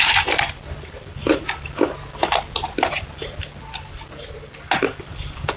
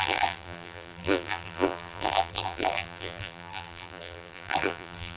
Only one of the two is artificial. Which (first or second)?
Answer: second